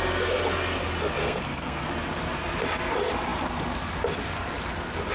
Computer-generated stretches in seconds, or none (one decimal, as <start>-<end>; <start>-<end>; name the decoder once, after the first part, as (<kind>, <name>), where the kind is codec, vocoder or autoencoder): 1.2-1.9 (codec, SNAC)